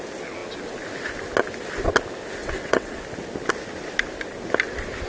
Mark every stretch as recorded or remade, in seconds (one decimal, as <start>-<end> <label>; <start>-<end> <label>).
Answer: 0.0-2.4 recorded; 2.4-3.0 remade; 3.0-5.1 recorded